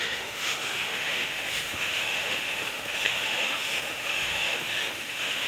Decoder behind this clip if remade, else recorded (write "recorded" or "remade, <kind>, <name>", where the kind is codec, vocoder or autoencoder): remade, autoencoder, DAC-VAE